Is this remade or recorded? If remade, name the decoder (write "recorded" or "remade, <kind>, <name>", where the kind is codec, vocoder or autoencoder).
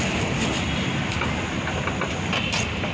recorded